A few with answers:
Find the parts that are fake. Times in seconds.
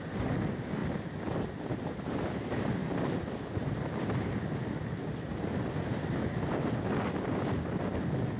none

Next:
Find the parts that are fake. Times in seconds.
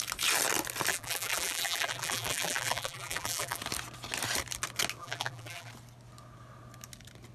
0.9-3.6 (vocoder, BigVGAN v2); 5.0-5.7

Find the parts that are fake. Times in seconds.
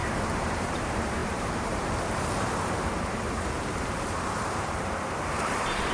0.0-5.9 (vocoder, BigVGAN v2)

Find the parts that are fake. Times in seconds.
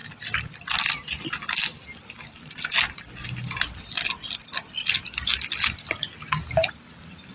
none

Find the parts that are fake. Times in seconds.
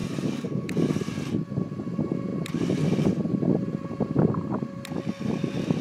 0.0-0.9 (codec, DAC)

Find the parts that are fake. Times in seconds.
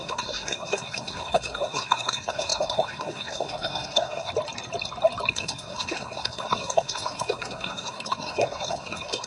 0.0-4.3 (codec, SNAC); 5.3-9.3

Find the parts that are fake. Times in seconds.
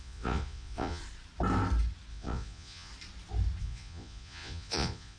0.0-1.0 (vocoder, Vocos); 2.1-2.9; 3.6-5.2